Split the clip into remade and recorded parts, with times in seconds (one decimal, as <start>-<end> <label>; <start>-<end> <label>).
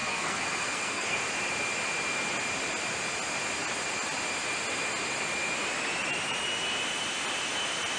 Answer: 0.0-1.2 remade; 1.2-8.0 recorded